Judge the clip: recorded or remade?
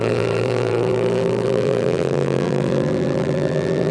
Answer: remade